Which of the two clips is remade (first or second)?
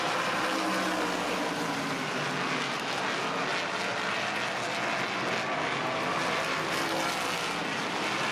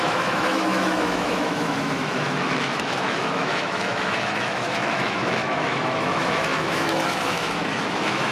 second